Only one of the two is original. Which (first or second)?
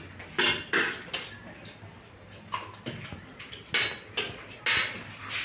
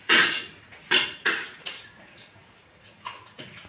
first